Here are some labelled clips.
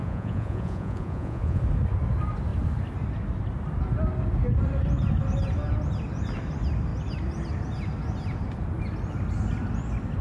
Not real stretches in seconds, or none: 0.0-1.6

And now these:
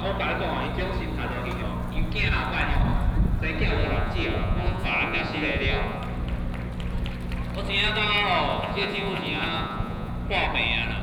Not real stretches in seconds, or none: 3.8-6.0; 8.5-10.1